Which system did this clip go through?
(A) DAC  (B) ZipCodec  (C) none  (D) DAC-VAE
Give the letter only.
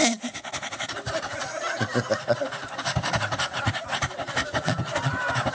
C